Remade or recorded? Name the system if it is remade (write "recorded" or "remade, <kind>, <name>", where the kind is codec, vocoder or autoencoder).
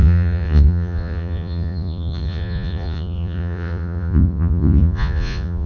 remade, vocoder, Vocos